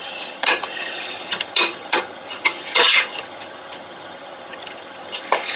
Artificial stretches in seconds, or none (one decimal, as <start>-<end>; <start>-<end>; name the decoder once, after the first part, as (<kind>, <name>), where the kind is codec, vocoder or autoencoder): 0.0-5.6 (vocoder, HiFi-GAN)